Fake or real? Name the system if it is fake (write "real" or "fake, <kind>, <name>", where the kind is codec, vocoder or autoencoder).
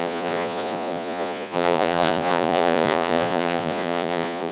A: fake, vocoder, Vocos